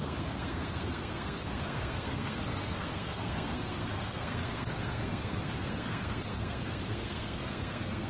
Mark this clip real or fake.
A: fake